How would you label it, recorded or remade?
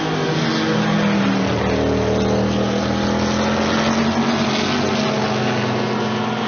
recorded